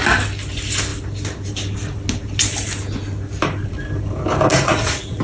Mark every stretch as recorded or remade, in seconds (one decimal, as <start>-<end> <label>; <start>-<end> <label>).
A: 0.0-4.5 recorded; 4.5-5.2 remade